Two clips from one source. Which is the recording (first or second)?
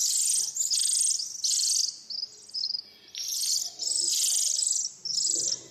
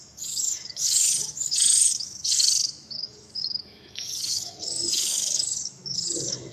first